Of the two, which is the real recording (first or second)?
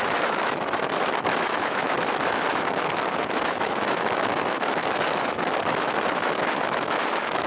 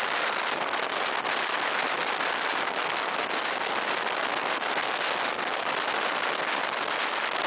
second